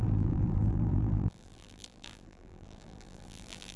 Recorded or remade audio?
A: remade